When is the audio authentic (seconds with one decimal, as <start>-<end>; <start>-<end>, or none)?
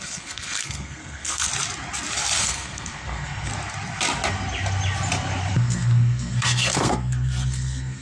1.5-2.4; 3.5-5.5